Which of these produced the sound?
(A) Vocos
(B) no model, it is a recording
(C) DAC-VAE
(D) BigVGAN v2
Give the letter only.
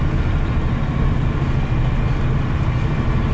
B